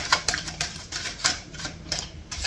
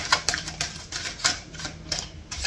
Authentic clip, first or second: second